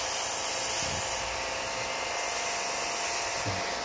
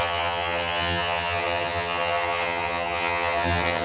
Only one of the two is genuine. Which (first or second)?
first